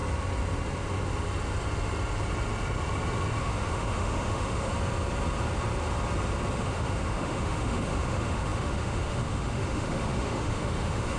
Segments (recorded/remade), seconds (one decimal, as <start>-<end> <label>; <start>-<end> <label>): 0.0-3.4 recorded; 3.4-4.7 remade; 4.7-6.6 recorded; 6.6-11.2 remade